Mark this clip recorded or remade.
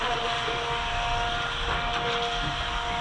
recorded